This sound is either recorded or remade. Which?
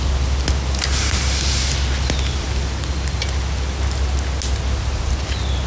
recorded